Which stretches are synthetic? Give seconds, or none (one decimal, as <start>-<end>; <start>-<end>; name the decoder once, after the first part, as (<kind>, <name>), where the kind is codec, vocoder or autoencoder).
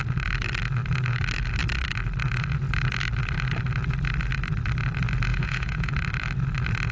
5.3-5.9 (vocoder, Vocos)